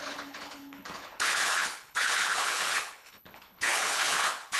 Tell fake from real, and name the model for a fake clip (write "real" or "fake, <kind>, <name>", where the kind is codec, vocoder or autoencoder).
fake, codec, HILCodec